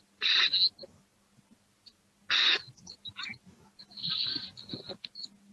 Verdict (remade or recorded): recorded